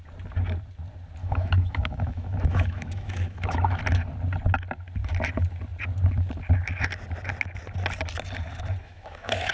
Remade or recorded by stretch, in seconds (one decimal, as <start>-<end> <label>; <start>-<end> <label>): 0.0-1.2 recorded; 1.2-3.8 remade; 3.8-8.8 recorded; 8.8-9.5 remade